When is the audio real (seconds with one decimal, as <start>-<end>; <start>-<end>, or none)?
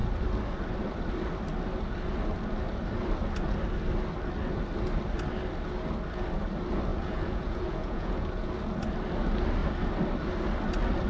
0.0-6.9; 8.5-11.1